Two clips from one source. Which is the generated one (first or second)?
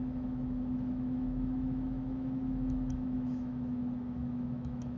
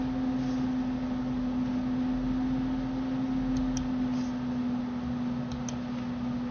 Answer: first